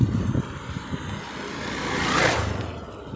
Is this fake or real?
real